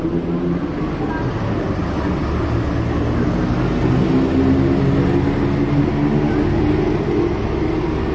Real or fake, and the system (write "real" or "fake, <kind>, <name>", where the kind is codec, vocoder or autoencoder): real